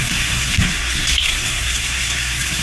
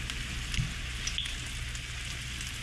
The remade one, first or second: first